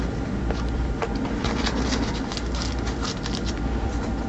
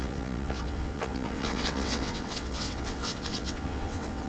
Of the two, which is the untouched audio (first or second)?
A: first